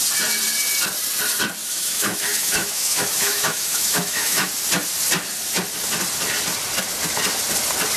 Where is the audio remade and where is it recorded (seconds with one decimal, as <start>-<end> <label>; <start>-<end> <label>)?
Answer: 0.0-1.6 recorded; 1.6-4.5 remade; 4.5-8.0 recorded